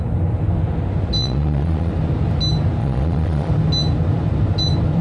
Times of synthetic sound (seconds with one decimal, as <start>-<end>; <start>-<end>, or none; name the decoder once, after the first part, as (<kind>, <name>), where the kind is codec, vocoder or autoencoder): 1.2-1.9 (vocoder, Vocos); 2.8-3.5